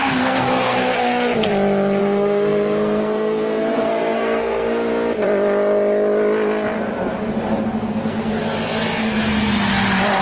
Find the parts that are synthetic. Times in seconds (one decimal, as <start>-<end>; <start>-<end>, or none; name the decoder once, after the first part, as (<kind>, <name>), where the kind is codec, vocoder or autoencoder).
0.0-1.5 (codec, SNAC); 2.0-4.9; 7.9-8.4